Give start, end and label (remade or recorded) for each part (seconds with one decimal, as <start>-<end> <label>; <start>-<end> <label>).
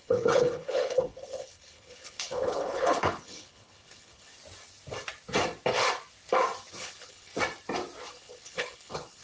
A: 0.0-4.3 remade; 4.3-6.7 recorded; 6.7-7.3 remade; 7.3-8.1 recorded; 8.1-9.2 remade